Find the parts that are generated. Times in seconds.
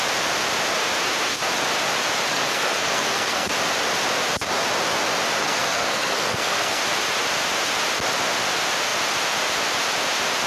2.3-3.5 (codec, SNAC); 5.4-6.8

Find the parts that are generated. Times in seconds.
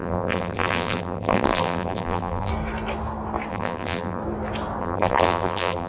0.0-2.5 (vocoder, BigVGAN v2); 3.5-4.2; 4.8-5.9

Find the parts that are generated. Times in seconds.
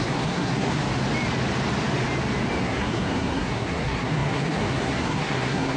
0.0-0.8 (codec, SNAC); 2.6-5.8